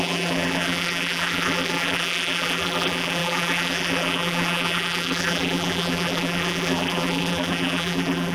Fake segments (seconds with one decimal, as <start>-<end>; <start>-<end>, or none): 0.0-8.3